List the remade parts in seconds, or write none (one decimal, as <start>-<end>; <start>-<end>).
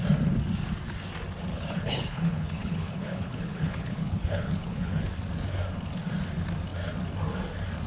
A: 1.5-5.1